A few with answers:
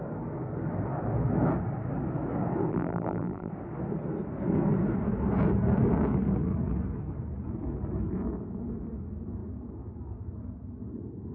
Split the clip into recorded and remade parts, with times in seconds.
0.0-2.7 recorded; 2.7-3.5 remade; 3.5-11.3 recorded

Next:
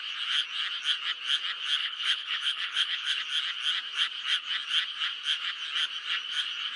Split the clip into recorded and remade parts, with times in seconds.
0.0-1.8 recorded; 1.8-3.2 remade; 3.2-6.8 recorded